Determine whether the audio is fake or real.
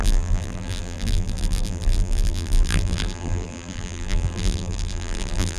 fake